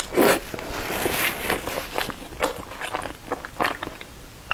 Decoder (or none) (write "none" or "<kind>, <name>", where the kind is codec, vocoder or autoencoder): none